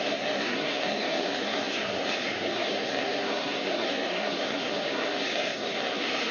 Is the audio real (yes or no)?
no